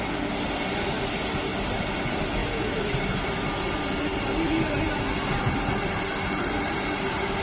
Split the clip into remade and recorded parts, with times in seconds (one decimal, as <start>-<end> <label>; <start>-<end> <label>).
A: 0.0-2.4 recorded; 2.4-3.2 remade; 3.2-7.4 recorded